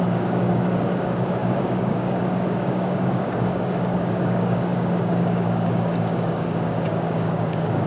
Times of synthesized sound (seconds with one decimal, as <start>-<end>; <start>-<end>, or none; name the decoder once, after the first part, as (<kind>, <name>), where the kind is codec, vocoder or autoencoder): 0.0-7.9 (codec, DAC)